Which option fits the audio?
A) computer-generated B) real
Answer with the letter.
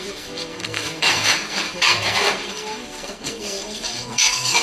A